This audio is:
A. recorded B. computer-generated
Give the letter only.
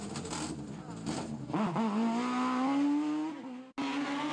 A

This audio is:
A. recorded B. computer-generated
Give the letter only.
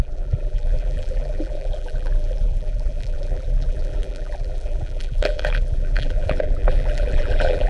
B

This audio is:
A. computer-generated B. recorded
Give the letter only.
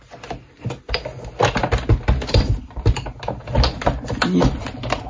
B